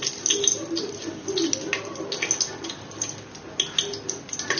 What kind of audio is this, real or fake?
real